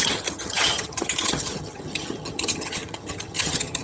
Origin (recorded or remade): remade